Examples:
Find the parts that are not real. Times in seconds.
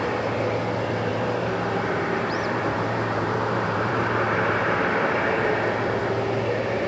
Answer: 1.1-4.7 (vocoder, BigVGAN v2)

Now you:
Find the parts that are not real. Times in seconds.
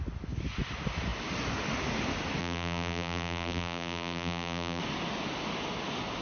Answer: 2.4-4.8 (vocoder, BigVGAN v2)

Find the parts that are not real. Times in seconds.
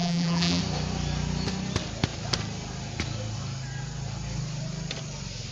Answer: 0.0-0.6 (vocoder, BigVGAN v2)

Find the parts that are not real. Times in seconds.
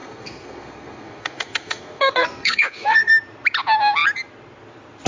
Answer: 0.0-3.1 (codec, SNAC)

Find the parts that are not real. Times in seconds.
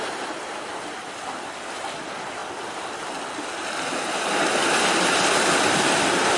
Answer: none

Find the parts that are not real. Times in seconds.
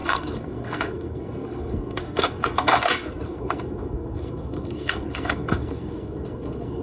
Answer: 0.0-6.8 (codec, SNAC)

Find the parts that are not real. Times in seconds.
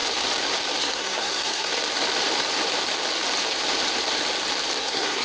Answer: 0.8-1.7 (codec, SNAC); 4.8-5.2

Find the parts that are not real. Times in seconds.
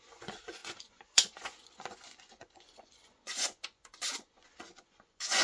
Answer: 0.0-5.4 (vocoder, Vocos)